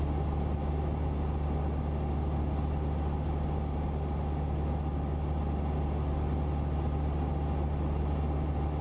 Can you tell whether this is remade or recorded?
recorded